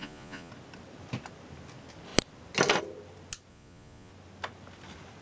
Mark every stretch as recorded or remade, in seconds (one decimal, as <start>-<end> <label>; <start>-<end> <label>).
0.0-0.5 remade; 0.5-3.5 recorded; 3.5-4.1 remade; 4.1-5.2 recorded